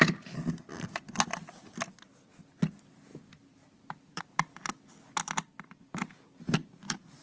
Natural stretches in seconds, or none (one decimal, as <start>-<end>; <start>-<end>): 0.0-3.1; 4.2-6.6